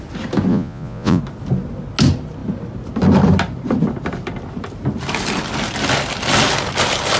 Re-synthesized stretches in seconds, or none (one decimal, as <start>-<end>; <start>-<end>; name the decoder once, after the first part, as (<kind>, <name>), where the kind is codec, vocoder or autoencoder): 0.5-1.2 (vocoder, Vocos)